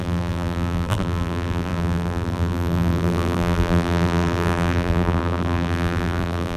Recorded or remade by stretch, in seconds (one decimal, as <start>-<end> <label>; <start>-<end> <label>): 0.0-6.6 remade